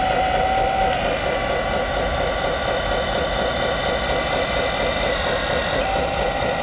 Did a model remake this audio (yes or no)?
no